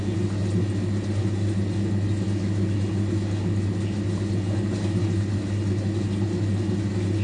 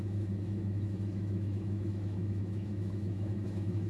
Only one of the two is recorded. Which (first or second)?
first